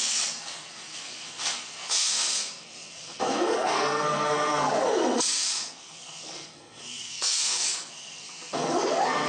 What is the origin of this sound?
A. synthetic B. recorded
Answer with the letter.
A